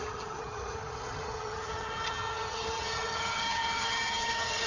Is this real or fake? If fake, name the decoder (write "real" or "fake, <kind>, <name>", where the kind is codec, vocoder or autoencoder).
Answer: fake, vocoder, HiFi-GAN